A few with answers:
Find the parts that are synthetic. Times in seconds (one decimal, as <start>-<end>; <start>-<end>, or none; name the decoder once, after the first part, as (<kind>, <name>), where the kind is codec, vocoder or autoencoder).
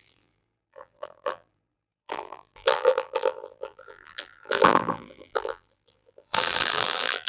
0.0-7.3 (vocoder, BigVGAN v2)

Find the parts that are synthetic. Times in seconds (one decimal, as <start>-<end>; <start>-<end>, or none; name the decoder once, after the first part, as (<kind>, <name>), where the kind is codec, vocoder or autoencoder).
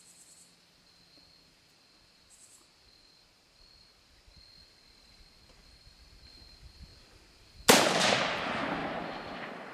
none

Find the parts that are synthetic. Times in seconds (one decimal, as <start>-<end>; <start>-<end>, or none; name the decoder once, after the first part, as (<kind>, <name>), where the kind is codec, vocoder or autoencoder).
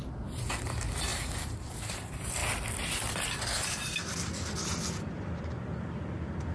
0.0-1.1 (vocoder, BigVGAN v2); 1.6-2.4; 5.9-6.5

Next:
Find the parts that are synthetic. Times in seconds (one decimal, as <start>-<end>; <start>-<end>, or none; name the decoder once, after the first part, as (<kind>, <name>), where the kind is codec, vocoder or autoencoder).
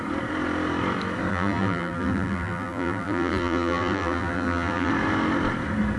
1.3-4.9 (vocoder, BigVGAN v2)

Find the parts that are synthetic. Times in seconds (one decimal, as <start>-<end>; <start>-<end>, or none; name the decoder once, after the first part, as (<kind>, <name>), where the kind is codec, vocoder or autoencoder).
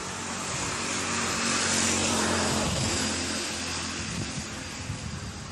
2.0-3.2 (vocoder, BigVGAN v2)